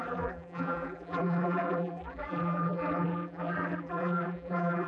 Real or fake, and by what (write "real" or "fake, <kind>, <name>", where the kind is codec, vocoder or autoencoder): fake, vocoder, BigVGAN v2